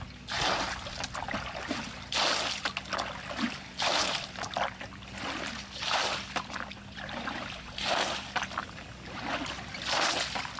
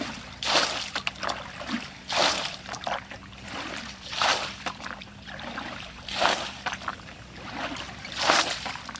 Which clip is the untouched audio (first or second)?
first